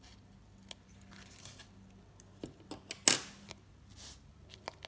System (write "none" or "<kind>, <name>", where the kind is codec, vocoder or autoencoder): none